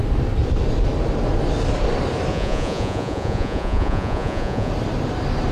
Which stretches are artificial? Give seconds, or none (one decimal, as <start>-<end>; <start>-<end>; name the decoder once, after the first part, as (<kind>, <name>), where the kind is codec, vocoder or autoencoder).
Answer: 2.3-4.7 (vocoder, Vocos)